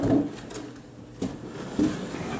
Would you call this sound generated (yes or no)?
no